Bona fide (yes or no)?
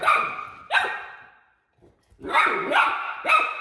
yes